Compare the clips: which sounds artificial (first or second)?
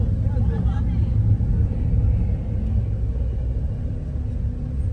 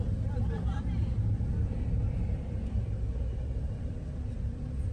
second